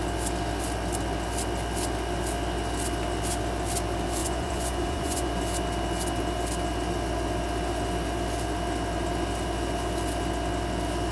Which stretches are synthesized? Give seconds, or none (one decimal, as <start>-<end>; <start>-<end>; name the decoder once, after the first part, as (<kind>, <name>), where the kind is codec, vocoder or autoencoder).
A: 4.2-5.4 (vocoder, Vocos)